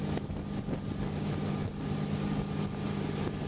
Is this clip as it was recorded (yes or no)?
yes